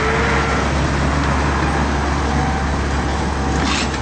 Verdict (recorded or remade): recorded